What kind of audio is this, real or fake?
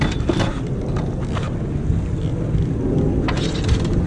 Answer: real